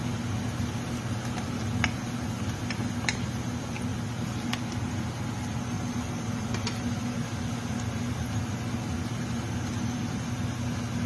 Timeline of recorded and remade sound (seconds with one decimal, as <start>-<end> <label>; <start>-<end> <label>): 0.0-11.1 recorded

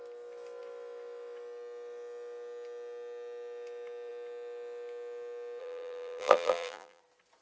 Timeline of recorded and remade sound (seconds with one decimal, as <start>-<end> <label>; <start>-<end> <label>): 0.0-5.6 recorded; 5.6-7.0 remade; 7.0-7.4 recorded